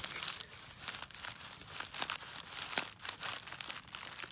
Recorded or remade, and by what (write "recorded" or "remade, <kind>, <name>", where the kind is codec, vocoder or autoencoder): recorded